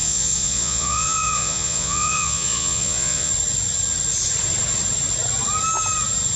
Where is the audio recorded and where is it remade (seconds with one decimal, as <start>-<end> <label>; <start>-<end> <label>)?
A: 0.0-3.3 remade; 3.3-6.4 recorded